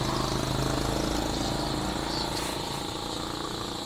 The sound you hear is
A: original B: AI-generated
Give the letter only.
A